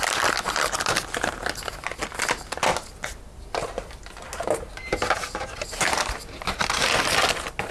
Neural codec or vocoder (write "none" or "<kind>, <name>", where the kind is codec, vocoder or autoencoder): none